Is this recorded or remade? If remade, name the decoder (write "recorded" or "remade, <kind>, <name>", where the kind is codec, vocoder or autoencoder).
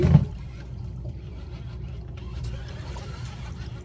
recorded